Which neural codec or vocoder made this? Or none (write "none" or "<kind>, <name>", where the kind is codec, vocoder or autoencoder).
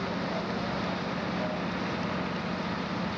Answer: none